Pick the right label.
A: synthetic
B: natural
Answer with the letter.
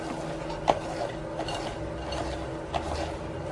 B